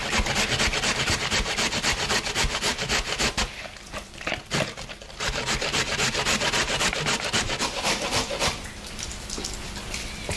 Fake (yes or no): yes